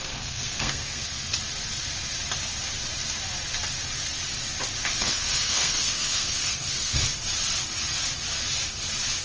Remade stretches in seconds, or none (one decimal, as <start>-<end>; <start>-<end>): 0.0-1.3; 5.0-7.0